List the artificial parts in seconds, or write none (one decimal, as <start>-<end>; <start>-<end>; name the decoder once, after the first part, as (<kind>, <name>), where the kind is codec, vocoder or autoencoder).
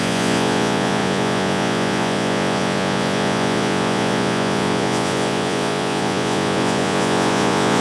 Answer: 0.0-7.8 (vocoder, Vocos)